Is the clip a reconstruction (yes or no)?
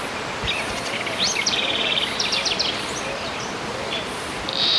yes